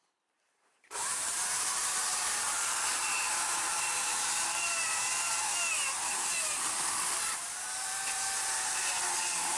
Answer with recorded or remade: remade